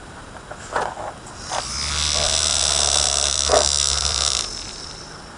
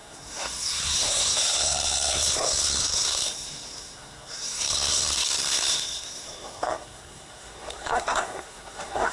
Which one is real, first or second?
first